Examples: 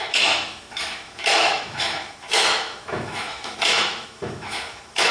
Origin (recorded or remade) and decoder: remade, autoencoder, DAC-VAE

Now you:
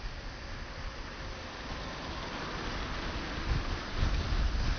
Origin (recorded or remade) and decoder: recorded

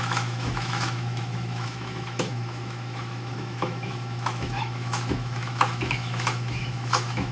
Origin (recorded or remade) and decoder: remade, autoencoder, DAC-VAE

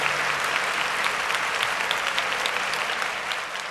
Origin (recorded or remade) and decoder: recorded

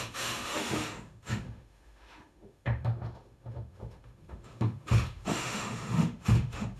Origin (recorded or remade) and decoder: remade, autoencoder, DAC-VAE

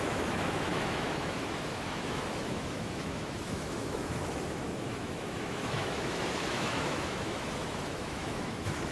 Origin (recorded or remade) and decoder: remade, autoencoder, DAC-VAE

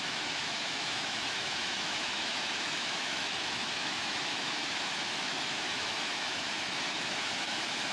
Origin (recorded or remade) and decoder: remade, autoencoder, DAC-VAE